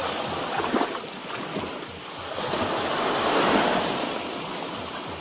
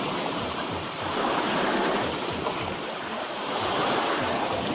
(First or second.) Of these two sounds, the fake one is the second